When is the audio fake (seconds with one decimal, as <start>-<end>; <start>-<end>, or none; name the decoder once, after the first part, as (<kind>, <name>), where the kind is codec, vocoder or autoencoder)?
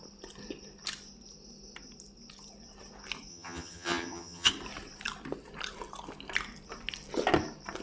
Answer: 3.3-4.5 (vocoder, HiFi-GAN)